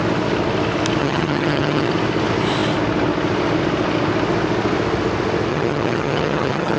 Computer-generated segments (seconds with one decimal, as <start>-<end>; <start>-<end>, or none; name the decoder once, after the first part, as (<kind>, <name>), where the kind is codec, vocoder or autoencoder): 1.0-1.9 (vocoder, HiFi-GAN); 5.5-6.8